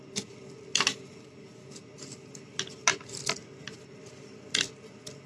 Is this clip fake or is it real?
real